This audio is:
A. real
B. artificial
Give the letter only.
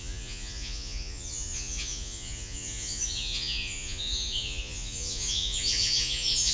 B